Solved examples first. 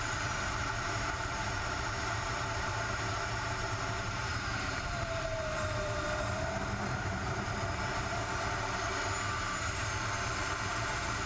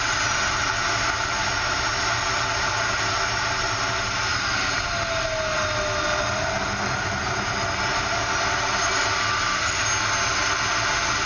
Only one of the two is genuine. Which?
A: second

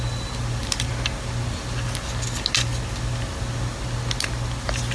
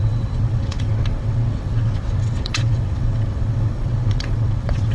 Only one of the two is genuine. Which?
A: first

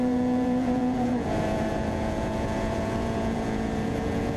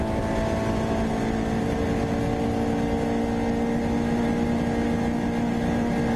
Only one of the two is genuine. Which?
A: second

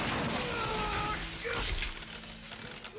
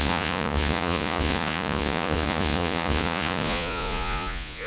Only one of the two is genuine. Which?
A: first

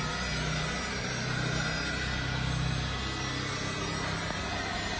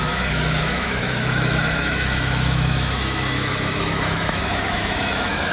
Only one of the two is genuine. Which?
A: first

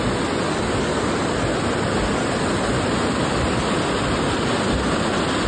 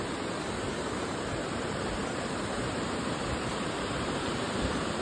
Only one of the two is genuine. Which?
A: first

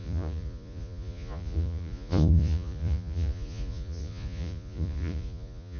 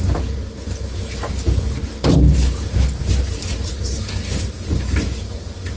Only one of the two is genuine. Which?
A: second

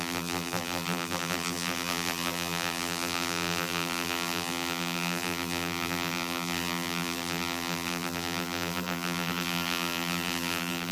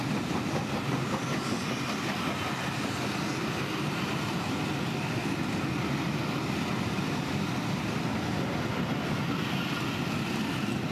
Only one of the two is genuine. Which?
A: second